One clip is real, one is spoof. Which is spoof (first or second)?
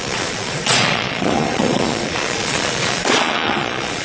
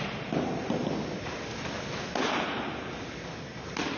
first